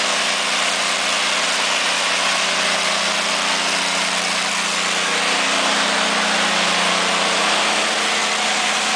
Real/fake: real